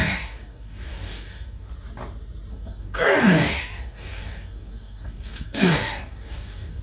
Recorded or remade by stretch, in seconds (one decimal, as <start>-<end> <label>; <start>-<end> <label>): 0.0-1.7 remade; 1.7-2.5 recorded; 2.5-6.8 remade